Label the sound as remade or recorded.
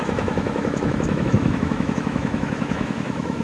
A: remade